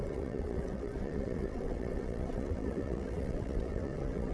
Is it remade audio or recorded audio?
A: remade